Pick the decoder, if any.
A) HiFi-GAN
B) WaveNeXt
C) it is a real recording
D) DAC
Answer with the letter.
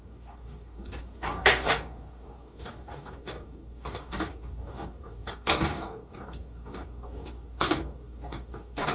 D